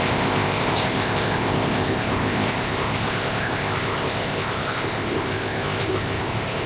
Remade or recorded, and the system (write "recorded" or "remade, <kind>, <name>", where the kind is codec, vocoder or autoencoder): remade, codec, ZipCodec